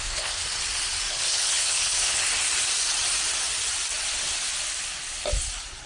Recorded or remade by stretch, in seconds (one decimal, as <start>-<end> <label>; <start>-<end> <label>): 0.0-0.4 remade; 0.4-1.1 recorded; 1.1-2.2 remade; 2.2-5.9 recorded